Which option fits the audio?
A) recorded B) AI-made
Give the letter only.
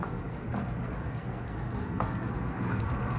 B